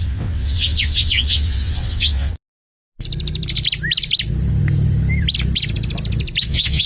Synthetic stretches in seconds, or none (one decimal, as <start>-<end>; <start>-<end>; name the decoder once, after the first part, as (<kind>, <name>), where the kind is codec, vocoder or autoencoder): 0.0-2.3 (vocoder, WaveNeXt); 6.4-6.9